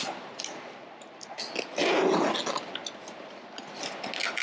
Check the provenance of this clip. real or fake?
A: real